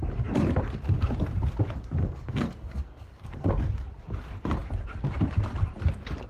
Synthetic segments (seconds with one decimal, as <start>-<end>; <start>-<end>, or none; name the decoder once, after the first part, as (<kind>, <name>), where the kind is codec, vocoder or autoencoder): 2.0-3.5 (codec, SNAC)